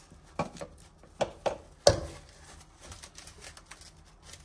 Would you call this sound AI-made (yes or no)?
no